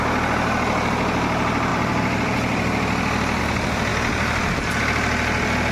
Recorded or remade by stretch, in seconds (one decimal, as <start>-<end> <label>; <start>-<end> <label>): 0.0-1.7 recorded; 1.7-3.4 remade; 3.4-5.7 recorded